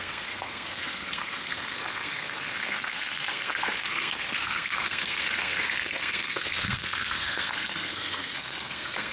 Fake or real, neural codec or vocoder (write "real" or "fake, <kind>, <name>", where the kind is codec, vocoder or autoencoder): fake, codec, SNAC